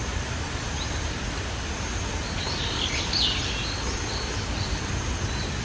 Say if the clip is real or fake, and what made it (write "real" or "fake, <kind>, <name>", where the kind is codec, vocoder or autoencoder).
real